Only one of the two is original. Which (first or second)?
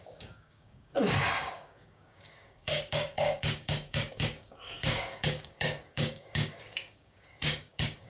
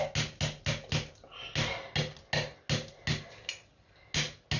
second